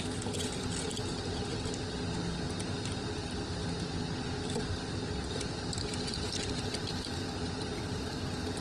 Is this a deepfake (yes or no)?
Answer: no